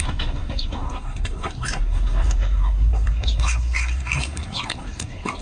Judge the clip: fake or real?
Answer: fake